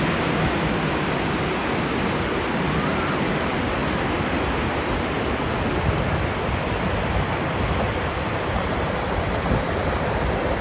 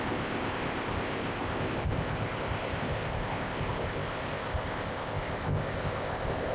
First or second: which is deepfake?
second